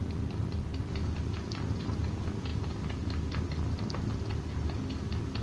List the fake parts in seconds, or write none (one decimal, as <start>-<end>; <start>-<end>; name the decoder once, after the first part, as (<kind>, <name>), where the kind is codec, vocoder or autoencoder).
none